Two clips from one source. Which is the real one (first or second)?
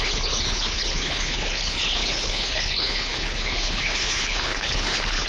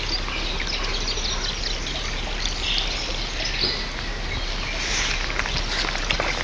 second